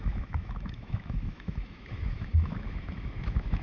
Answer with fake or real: fake